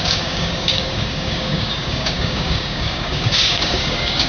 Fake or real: fake